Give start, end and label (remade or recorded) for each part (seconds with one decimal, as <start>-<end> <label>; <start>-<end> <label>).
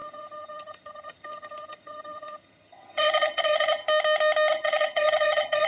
0.0-3.8 remade; 3.8-4.5 recorded; 4.5-5.7 remade